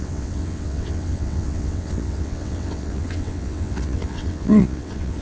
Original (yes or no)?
no